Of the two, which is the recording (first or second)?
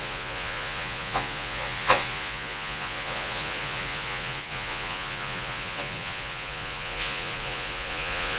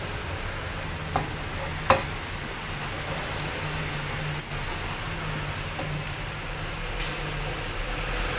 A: second